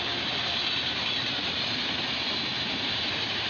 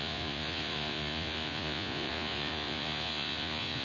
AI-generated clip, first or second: second